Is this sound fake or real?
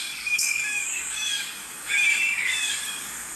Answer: fake